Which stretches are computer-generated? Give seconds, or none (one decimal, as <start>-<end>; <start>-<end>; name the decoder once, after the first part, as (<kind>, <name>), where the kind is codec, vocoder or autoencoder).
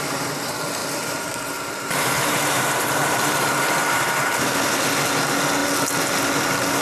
0.8-4.5 (vocoder, BigVGAN v2)